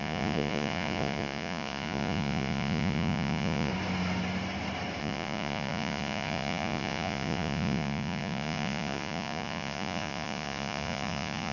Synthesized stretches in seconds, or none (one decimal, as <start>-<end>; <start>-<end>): 0.0-3.7; 5.0-11.5